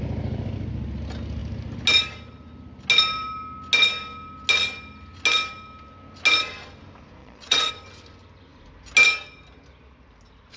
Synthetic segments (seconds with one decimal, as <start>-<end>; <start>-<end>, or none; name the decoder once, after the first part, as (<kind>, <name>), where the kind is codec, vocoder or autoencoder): 7.2-7.7 (vocoder, Vocos)